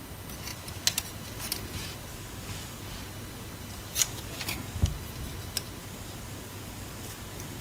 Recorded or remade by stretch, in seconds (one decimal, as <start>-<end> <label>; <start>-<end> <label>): 0.0-2.1 recorded; 2.1-2.8 remade; 2.8-4.0 recorded; 4.0-4.9 remade; 4.9-5.8 recorded; 5.8-7.6 remade